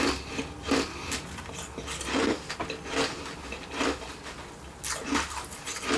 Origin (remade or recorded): recorded